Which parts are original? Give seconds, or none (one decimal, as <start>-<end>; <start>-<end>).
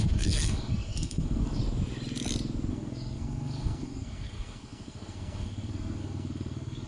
1.6-2.7